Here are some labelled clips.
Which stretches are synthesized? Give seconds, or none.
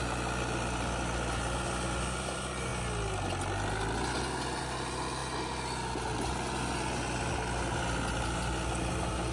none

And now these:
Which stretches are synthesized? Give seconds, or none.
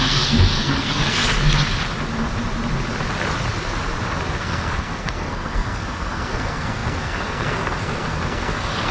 0.0-1.2 (codec, SNAC); 4.4-8.9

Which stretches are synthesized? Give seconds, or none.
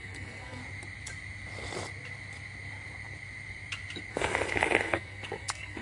0.0-0.6 (codec, SNAC); 4.1-5.8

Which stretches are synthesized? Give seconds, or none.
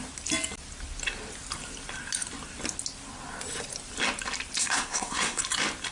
4.6-5.4 (codec, SNAC)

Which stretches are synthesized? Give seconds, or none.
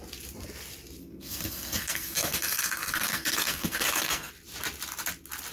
1.0-4.3 (codec, SNAC)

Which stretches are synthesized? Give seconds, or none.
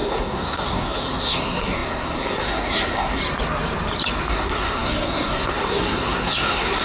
0.0-3.2 (codec, SNAC); 4.3-6.8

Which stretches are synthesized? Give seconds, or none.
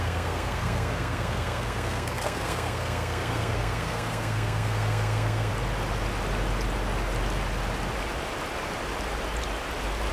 0.0-5.5 (codec, SNAC)